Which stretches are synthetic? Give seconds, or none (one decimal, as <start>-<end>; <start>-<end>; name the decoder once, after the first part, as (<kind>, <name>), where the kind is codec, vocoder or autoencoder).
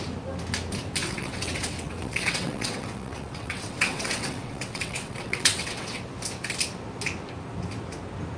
1.0-6.0 (vocoder, WaveNeXt)